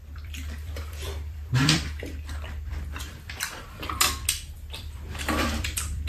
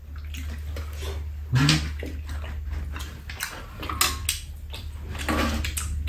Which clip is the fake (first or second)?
first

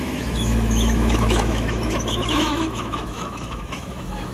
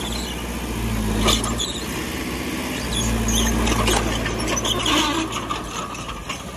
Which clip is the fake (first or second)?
first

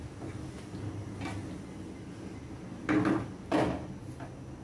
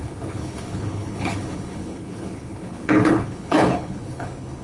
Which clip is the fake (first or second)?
second